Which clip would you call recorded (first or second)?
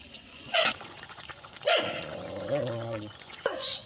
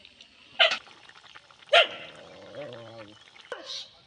second